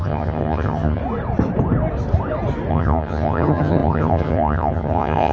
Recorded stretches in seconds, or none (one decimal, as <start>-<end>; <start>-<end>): 1.0-2.7